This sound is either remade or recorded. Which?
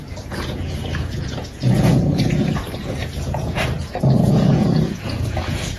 remade